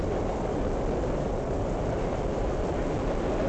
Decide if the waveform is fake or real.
real